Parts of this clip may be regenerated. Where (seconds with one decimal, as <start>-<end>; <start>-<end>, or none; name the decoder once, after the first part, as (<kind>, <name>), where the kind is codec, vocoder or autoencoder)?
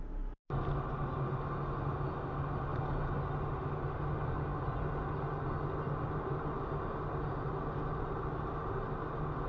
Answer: none